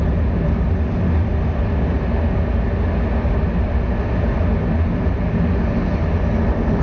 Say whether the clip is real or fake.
real